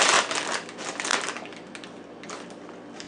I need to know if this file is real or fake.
real